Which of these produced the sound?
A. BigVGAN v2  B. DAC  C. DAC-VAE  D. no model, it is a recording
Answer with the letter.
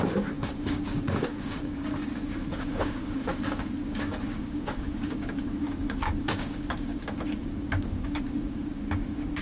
B